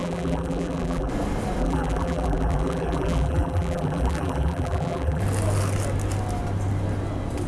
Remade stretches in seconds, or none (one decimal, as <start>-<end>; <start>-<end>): 0.0-1.1; 1.6-5.2